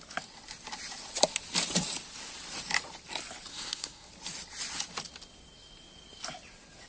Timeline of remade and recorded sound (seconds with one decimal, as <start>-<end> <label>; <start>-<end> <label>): 0.0-3.5 recorded; 3.5-4.1 remade; 4.1-6.9 recorded